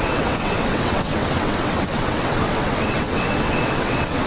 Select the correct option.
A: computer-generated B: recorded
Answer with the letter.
A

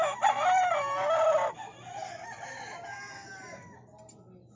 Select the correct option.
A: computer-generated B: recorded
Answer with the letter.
B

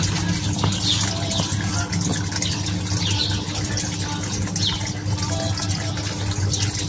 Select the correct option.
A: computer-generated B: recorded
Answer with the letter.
B